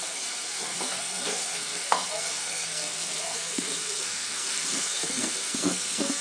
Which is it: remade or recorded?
remade